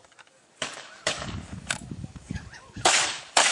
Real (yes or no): no